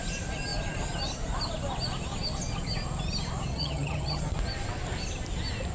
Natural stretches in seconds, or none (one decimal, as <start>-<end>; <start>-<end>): 0.0-3.5; 4.2-5.7